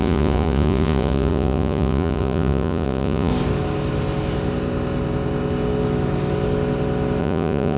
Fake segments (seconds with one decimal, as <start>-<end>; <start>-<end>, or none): 0.0-3.3; 7.2-7.8